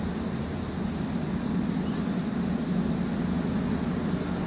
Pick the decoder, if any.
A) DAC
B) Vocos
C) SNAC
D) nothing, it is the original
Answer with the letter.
D